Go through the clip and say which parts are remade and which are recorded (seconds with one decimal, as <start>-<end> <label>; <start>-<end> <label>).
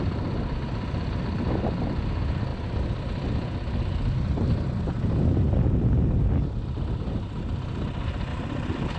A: 0.0-9.0 recorded